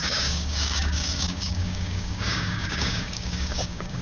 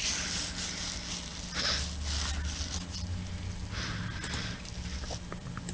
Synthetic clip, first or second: first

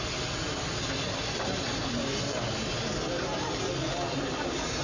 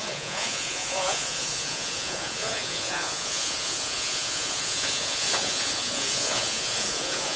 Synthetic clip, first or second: second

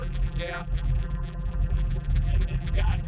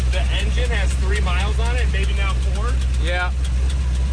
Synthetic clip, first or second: first